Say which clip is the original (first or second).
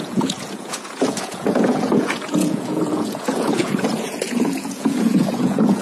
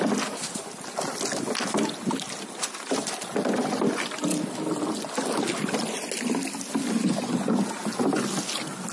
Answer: second